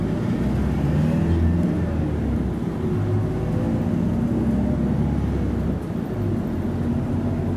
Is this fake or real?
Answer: real